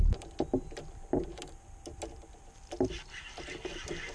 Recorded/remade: recorded